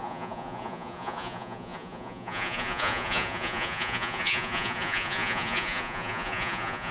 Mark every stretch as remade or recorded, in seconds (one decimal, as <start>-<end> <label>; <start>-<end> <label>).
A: 0.0-6.9 remade